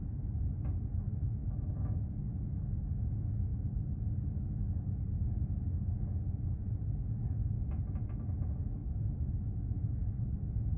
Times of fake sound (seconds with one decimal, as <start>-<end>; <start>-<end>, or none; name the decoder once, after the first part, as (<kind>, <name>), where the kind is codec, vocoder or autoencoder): 1.4-2.8 (autoencoder, DAC-VAE); 8.8-9.9